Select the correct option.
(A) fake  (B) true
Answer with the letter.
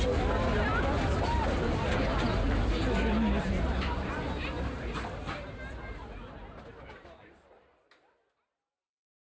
B